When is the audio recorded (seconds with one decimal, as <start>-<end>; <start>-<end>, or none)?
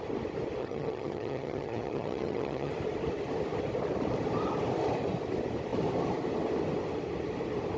0.0-0.6; 2.7-7.8